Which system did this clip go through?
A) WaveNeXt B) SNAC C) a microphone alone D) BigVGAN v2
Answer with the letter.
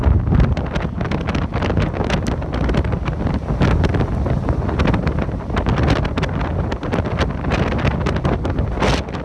C